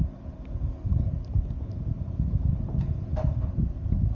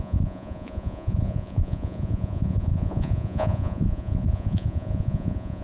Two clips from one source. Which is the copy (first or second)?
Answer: second